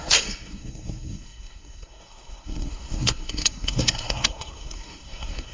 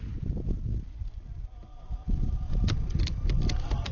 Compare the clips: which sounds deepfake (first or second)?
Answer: first